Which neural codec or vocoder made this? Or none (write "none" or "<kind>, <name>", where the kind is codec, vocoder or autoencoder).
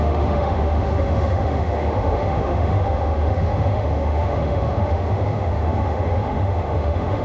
autoencoder, DAC-VAE